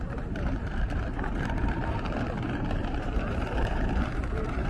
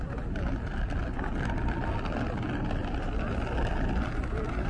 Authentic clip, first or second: second